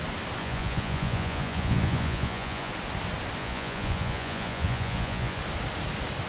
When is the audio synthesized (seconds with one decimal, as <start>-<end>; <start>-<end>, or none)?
0.4-2.7; 3.4-5.4